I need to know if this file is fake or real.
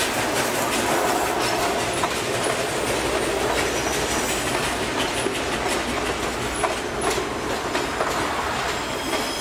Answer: real